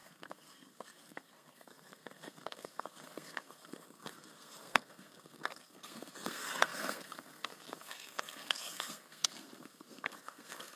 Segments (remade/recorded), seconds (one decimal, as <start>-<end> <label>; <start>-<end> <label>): 0.0-10.8 remade